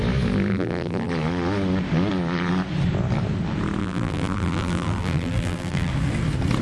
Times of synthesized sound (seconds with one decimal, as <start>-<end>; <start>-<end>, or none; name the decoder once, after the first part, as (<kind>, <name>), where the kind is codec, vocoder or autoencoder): 0.5-1.1 (vocoder, BigVGAN v2); 3.8-5.9